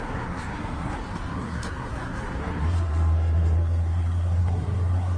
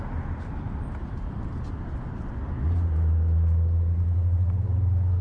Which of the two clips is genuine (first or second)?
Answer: second